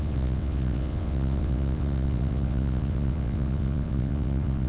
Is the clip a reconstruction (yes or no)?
yes